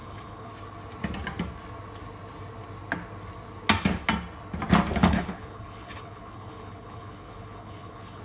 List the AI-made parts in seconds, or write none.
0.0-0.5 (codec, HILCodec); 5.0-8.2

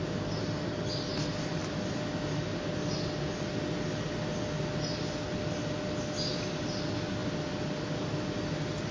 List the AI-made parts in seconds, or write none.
none

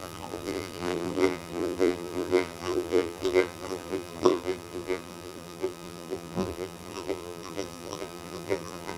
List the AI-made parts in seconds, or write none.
0.0-9.0 (vocoder, BigVGAN v2)

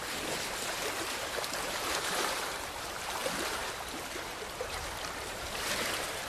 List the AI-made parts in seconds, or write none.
0.0-6.3 (vocoder, BigVGAN v2)

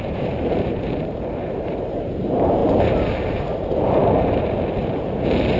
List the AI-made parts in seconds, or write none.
0.0-5.6 (vocoder, BigVGAN v2)